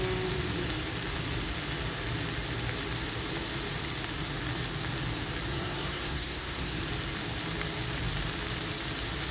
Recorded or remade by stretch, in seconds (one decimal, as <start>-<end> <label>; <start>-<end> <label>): 0.0-5.5 recorded; 5.5-6.8 remade; 6.8-9.3 recorded